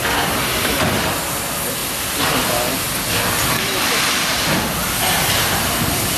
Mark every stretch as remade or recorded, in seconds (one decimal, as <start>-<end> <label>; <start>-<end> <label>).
0.0-6.2 recorded

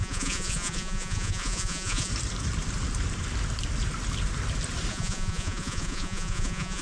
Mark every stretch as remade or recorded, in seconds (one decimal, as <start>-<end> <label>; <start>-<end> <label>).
0.0-2.1 remade; 2.1-4.9 recorded; 4.9-6.8 remade